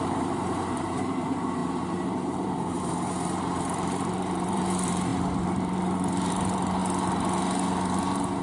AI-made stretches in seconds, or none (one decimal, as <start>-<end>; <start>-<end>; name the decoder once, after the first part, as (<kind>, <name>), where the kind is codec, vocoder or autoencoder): 0.0-6.8 (vocoder, BigVGAN v2)